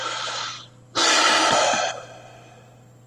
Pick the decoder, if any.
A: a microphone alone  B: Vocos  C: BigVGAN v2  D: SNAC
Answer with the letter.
A